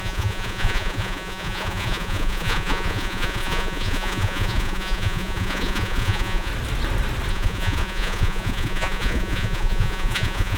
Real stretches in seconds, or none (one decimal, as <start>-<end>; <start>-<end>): 6.5-7.3